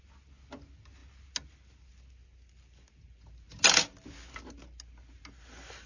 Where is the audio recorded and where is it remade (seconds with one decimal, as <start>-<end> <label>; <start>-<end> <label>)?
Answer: 0.0-5.9 recorded

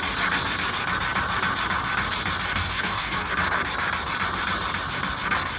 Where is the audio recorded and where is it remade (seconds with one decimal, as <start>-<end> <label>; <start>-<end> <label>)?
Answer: 0.0-2.5 recorded; 2.5-3.3 remade; 3.3-5.6 recorded